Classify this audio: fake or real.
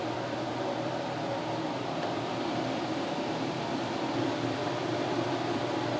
fake